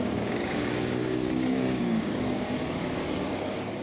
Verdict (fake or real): fake